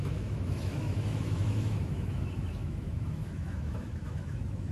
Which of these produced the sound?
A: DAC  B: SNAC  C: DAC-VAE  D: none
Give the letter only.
C